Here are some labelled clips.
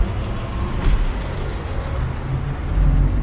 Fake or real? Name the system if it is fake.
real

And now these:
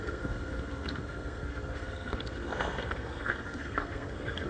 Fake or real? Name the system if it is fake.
fake, codec, SNAC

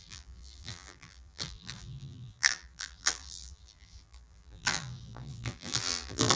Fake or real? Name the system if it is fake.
fake, vocoder, BigVGAN v2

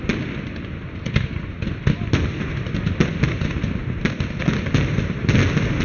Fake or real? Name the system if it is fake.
real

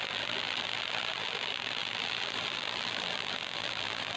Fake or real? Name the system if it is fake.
fake, vocoder, BigVGAN v2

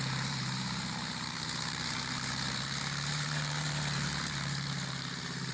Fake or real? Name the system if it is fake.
fake, vocoder, BigVGAN v2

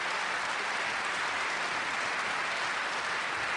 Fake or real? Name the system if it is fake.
real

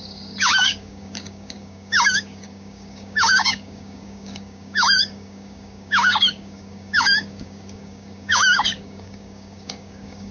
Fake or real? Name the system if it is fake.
fake, codec, DAC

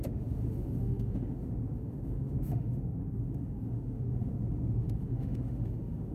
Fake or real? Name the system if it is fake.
fake, autoencoder, DAC-VAE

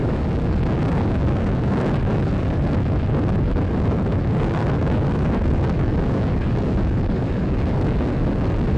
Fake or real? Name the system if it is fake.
fake, codec, DAC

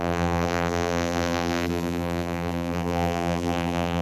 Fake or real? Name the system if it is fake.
fake, vocoder, BigVGAN v2